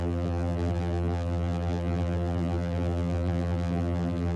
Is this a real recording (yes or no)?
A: no